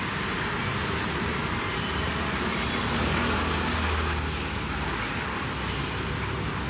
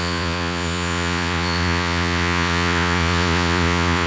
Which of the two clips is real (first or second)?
first